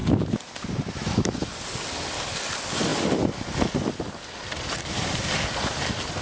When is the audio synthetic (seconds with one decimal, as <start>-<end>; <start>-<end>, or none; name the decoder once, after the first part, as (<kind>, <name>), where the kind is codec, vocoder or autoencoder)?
none